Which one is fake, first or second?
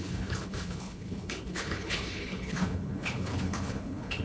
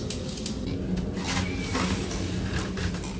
first